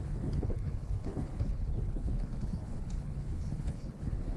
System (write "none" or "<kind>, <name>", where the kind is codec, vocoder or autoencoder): codec, HILCodec